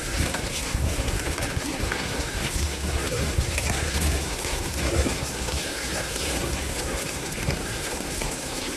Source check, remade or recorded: remade